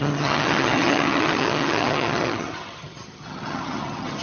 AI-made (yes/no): yes